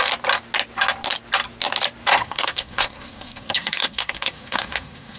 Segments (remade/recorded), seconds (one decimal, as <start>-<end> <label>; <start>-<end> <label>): 0.0-2.1 recorded; 2.1-5.2 remade